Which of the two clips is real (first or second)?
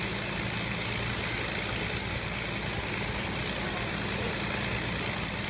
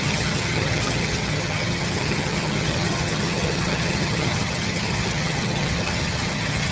first